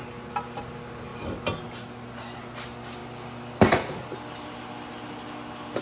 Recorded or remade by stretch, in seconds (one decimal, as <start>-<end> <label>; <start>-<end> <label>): 0.0-5.8 recorded